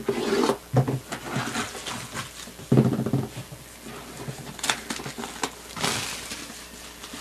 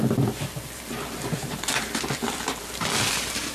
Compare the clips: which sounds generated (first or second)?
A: second